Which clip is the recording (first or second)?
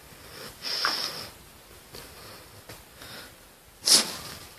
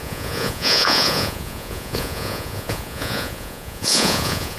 first